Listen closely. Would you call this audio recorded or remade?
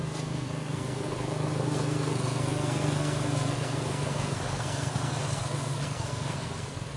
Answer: remade